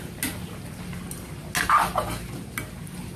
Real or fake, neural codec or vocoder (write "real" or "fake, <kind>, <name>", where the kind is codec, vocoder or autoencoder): real